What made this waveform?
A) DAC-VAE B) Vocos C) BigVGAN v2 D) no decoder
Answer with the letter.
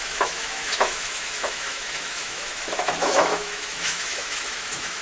A